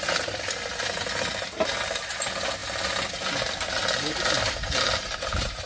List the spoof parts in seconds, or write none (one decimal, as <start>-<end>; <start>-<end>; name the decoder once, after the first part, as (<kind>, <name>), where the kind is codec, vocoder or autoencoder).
none